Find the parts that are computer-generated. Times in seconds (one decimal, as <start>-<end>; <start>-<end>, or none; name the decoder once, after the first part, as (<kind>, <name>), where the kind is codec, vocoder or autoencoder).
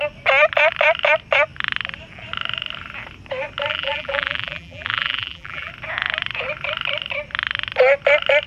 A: 3.7-5.7 (vocoder, BigVGAN v2)